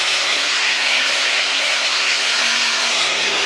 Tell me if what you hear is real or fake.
fake